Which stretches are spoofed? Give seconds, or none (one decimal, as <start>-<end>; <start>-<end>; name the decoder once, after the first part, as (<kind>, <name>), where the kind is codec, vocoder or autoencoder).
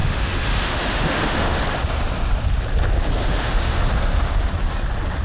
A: 0.0-1.6 (autoencoder, DAC-VAE); 3.2-3.8